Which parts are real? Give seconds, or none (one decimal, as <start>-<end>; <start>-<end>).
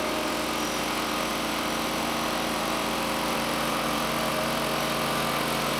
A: 0.0-1.3; 4.3-5.8